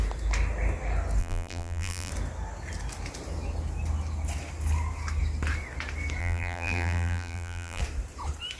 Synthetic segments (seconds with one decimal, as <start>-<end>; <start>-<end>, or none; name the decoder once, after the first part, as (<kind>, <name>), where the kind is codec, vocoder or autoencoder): 1.2-2.1 (vocoder, BigVGAN v2); 6.2-7.8